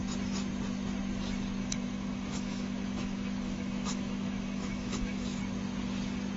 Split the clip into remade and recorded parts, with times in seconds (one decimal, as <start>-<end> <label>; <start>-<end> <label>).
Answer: 0.0-1.6 recorded; 1.6-5.4 remade; 5.4-6.4 recorded